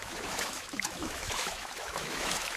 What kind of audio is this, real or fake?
fake